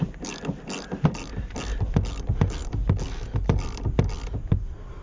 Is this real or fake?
real